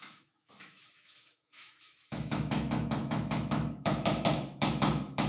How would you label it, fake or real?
fake